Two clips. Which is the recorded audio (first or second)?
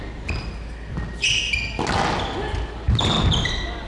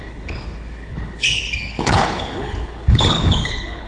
first